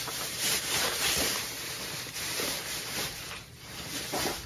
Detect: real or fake fake